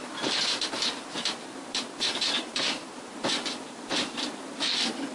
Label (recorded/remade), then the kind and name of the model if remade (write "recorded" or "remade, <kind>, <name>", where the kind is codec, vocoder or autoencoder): remade, vocoder, BigVGAN v2